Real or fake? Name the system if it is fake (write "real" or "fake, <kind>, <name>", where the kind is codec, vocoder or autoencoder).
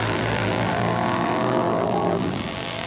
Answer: fake, vocoder, BigVGAN v2